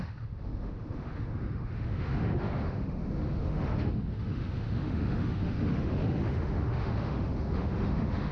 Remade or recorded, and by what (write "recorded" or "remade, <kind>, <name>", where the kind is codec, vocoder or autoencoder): remade, autoencoder, DAC-VAE